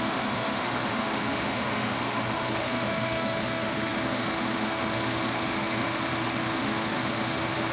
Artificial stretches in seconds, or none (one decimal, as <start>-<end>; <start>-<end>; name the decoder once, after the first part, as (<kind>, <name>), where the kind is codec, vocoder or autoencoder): 0.0-7.7 (autoencoder, DAC-VAE)